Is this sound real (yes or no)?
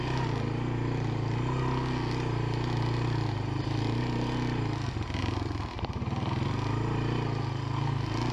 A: yes